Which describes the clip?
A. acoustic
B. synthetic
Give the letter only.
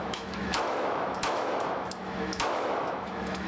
B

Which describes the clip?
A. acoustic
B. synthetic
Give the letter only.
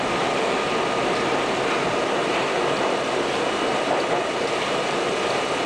A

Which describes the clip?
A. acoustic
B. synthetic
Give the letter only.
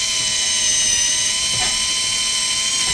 A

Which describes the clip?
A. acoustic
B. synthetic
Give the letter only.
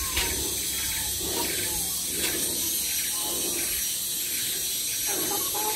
A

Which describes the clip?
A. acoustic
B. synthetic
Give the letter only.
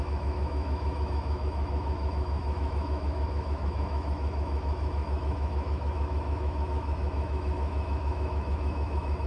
B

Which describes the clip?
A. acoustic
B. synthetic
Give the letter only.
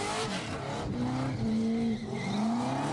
A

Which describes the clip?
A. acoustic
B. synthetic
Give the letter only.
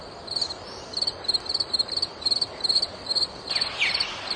A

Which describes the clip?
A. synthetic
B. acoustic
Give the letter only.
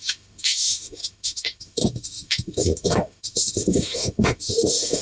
A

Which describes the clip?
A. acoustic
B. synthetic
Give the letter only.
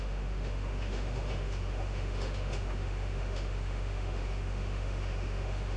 B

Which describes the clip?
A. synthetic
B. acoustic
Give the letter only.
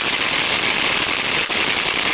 B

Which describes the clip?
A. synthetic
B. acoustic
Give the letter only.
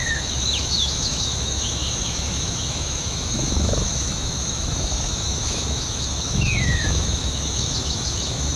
A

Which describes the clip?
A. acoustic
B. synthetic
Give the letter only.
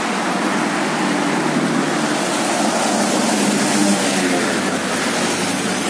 A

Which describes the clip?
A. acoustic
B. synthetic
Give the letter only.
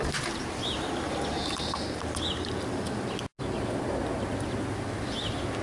A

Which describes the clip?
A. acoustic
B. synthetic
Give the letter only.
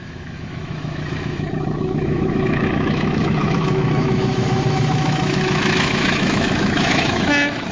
B